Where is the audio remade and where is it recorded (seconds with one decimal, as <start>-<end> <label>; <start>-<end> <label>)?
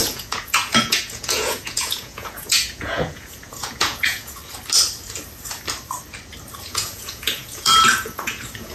0.0-4.4 remade; 4.4-6.6 recorded; 6.6-8.7 remade